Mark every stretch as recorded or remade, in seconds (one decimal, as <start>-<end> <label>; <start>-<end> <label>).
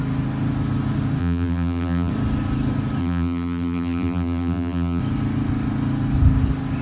0.0-1.2 recorded; 1.2-2.1 remade; 2.1-3.0 recorded; 3.0-5.0 remade; 5.0-6.8 recorded